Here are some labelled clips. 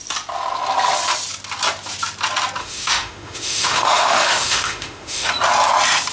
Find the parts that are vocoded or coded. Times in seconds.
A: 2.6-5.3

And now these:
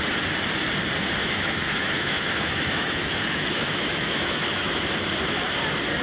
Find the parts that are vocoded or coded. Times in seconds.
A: 1.2-4.8

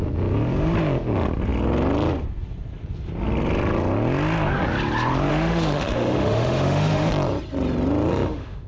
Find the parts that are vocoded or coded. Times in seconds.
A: 5.3-7.1; 8.1-8.7

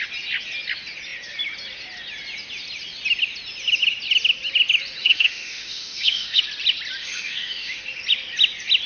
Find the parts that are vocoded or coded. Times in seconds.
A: 5.0-6.4; 7.0-7.8

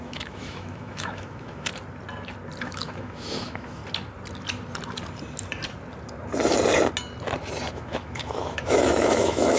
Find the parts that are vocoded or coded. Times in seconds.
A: 0.0-1.7; 2.6-3.8; 7.7-9.6

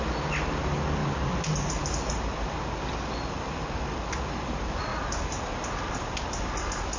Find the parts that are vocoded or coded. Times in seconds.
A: none

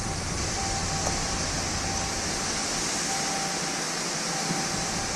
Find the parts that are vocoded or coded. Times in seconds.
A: none

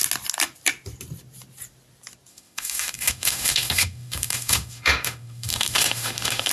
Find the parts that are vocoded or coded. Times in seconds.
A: 2.3-6.5